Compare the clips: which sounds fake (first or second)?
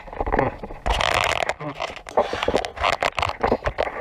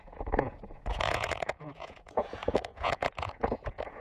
second